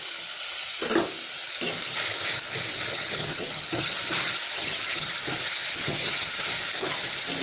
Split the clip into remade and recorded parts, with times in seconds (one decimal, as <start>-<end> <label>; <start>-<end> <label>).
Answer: 0.0-2.9 recorded; 2.9-4.0 remade; 4.0-4.6 recorded; 4.6-5.1 remade; 5.1-5.7 recorded; 5.7-6.4 remade; 6.4-7.4 recorded